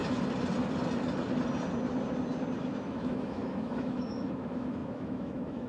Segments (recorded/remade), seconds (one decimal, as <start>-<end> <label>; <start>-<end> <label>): 0.0-2.6 recorded; 2.6-5.7 remade